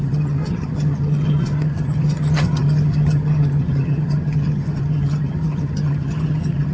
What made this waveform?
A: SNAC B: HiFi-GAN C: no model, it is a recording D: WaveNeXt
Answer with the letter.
B